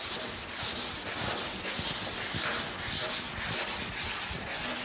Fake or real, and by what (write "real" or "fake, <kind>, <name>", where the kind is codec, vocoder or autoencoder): real